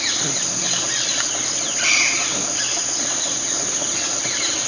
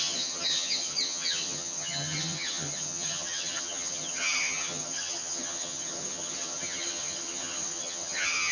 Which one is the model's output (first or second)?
second